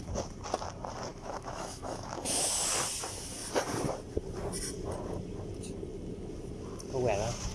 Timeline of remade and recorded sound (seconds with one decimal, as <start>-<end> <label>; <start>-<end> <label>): 0.0-1.1 recorded; 1.1-2.5 remade; 2.5-7.5 recorded